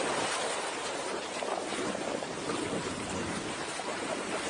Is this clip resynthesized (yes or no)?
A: yes